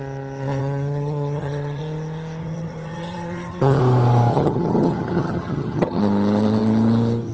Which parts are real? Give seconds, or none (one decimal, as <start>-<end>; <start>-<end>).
0.0-0.6; 1.8-2.4; 3.8-4.3; 6.0-7.3